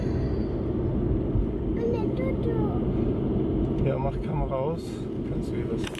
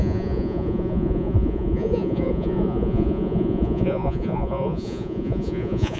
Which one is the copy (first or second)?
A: second